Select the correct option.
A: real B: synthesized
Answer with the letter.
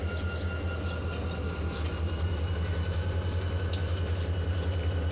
A